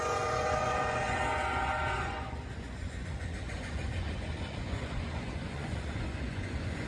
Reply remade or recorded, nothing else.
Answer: remade